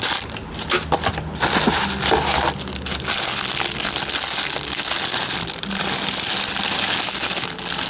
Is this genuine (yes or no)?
yes